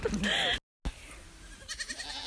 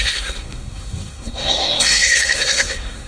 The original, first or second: first